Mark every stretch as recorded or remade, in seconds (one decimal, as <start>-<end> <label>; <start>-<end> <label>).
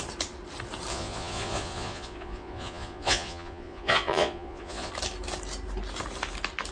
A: 0.0-0.9 recorded; 0.9-4.9 remade; 4.9-6.7 recorded